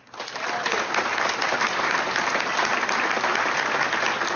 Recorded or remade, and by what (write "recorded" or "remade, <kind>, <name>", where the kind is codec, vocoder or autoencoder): recorded